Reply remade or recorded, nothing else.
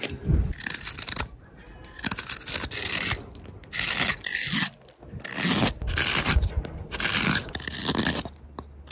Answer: recorded